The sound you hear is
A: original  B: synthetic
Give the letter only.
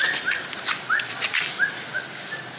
A